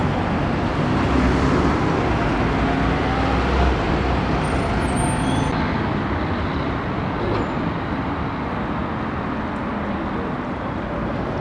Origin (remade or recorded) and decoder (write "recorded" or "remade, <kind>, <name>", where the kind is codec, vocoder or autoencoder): recorded